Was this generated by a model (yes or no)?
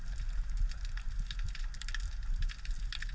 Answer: no